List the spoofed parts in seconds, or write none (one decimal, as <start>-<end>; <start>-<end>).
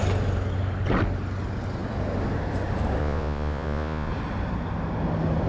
3.0-4.1